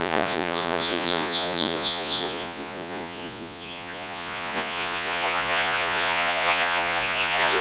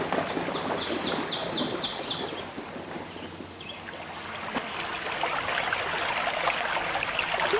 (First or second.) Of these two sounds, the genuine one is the second